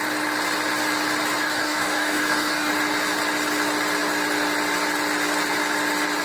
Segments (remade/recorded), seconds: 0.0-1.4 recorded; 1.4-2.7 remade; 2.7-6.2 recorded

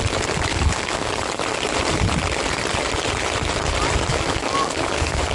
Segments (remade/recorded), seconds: 0.0-0.5 recorded; 0.5-1.1 remade; 1.1-4.1 recorded; 4.1-5.3 remade

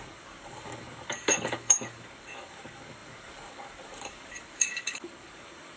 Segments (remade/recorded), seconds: 0.0-5.8 remade

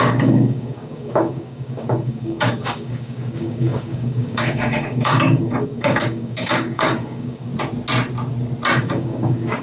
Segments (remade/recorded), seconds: 0.0-7.5 remade; 7.5-8.8 recorded; 8.8-9.6 remade

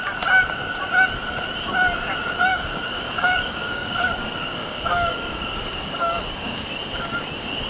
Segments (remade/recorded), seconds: 0.0-2.5 recorded; 2.5-6.7 remade; 6.7-7.7 recorded

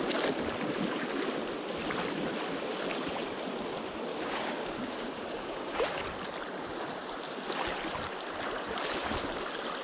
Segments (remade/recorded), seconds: 0.0-4.1 recorded; 4.1-6.0 remade; 6.0-9.8 recorded